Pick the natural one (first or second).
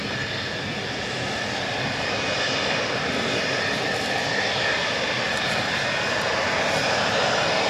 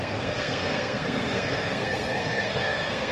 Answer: first